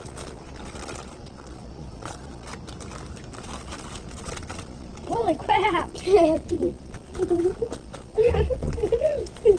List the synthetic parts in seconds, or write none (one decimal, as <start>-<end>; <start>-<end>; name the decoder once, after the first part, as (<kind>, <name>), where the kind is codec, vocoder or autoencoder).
0.0-2.5 (vocoder, Vocos); 3.4-9.6